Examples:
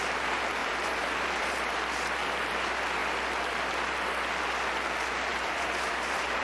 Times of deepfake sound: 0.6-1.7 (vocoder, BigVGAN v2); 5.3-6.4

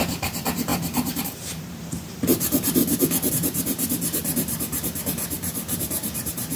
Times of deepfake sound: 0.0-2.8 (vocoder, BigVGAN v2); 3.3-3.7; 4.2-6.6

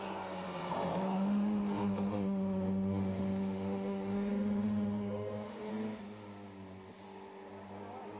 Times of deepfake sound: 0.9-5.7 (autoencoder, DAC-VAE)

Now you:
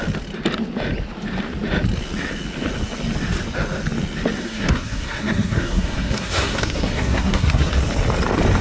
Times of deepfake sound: 4.4-7.7 (codec, SNAC)

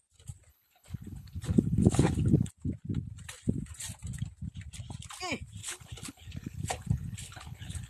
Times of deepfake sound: 0.5-2.5 (codec, HILCodec); 5.6-7.9